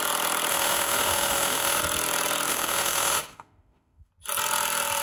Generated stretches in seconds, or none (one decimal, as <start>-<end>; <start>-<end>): 0.5-1.8; 2.5-4.1